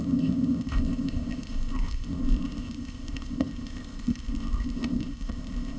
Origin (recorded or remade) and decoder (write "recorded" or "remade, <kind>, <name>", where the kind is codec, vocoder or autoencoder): remade, codec, ZipCodec